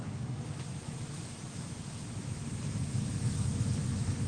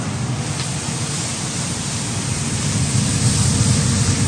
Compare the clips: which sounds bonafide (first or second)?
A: second